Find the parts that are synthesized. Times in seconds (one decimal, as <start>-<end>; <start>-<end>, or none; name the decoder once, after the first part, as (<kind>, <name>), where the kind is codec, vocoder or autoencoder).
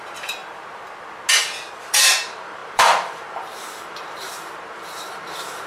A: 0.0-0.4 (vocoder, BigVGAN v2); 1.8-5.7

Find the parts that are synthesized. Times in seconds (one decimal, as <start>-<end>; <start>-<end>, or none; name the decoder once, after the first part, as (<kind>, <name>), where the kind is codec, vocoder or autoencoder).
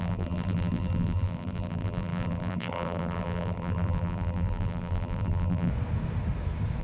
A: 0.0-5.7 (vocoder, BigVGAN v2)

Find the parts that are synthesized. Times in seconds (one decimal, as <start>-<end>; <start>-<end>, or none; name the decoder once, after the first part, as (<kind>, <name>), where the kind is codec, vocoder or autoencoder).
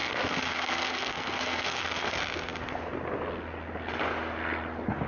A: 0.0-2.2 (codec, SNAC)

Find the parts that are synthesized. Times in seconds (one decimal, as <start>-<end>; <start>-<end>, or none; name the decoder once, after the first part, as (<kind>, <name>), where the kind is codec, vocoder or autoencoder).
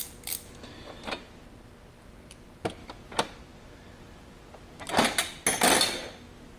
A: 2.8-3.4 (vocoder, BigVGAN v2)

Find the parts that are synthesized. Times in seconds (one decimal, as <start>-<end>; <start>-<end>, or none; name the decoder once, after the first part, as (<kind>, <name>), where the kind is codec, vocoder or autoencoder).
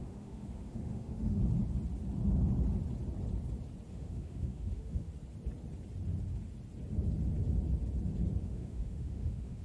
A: 0.0-1.4 (autoencoder, DAC-VAE); 3.9-5.1; 8.4-9.6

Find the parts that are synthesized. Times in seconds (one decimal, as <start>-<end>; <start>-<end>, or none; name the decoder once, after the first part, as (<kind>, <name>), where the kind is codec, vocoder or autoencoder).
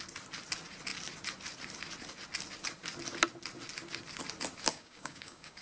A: 4.7-5.6 (codec, DAC)